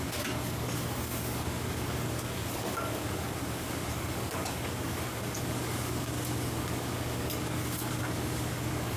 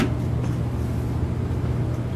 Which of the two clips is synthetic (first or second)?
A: first